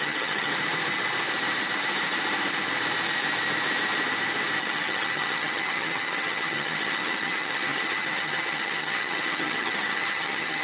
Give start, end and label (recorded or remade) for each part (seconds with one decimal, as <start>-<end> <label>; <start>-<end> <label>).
0.0-0.5 remade; 0.5-4.6 recorded; 4.6-10.6 remade